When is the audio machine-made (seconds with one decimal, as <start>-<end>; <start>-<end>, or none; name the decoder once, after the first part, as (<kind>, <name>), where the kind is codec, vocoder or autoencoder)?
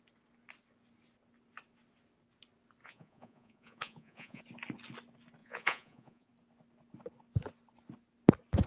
2.8-4.4 (vocoder, Vocos); 5.4-6.3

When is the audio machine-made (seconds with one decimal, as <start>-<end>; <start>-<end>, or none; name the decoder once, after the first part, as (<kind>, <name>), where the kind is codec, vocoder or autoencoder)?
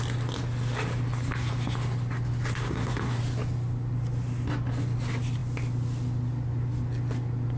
2.7-3.2 (codec, SNAC)